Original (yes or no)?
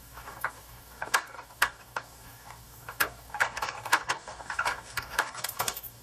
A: no